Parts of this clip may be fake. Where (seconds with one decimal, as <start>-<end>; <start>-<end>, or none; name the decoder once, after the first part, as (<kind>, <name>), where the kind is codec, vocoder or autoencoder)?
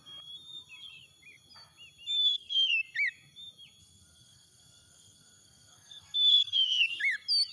2.2-2.7 (codec, SNAC); 3.8-7.0